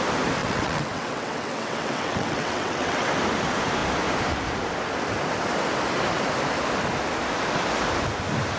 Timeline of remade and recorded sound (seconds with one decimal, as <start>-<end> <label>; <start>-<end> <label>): 0.0-0.4 recorded; 0.4-3.1 remade; 3.1-8.6 recorded